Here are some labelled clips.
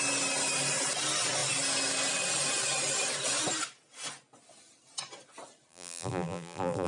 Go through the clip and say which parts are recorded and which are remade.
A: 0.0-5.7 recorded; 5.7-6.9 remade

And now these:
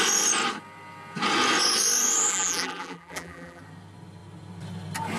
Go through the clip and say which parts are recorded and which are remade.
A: 0.0-2.3 recorded; 2.3-3.6 remade; 3.6-5.2 recorded

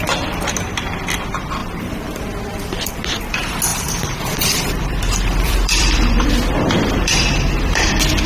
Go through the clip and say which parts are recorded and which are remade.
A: 0.0-1.6 recorded; 1.6-2.9 remade; 2.9-3.7 recorded; 3.7-7.9 remade; 7.9-8.3 recorded

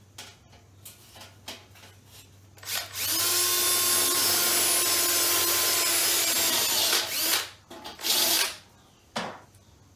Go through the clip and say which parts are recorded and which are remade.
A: 0.0-6.0 recorded; 6.0-6.6 remade; 6.6-7.9 recorded; 7.9-8.6 remade; 8.6-10.0 recorded

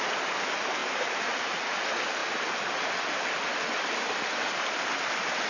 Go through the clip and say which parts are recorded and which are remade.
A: 0.0-0.8 recorded; 0.8-1.6 remade; 1.6-5.5 recorded

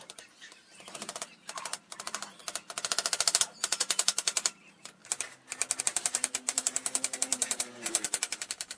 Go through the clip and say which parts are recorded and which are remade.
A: 0.0-2.4 remade; 2.4-3.4 recorded; 3.4-5.0 remade; 5.0-5.8 recorded; 5.8-8.8 remade

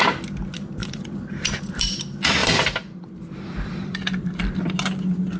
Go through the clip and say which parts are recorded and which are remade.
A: 0.0-0.8 recorded; 0.8-2.0 remade; 2.0-2.4 recorded; 2.4-4.6 remade; 4.6-5.4 recorded